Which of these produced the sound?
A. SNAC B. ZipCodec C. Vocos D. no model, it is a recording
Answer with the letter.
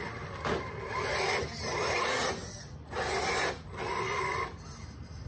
D